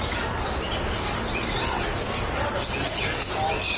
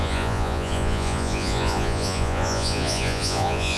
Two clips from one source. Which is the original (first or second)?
first